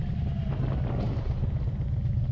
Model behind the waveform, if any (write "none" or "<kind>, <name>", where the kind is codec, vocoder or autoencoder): none